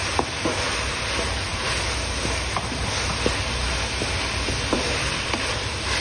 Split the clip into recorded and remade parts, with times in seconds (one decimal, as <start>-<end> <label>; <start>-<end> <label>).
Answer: 0.0-6.0 recorded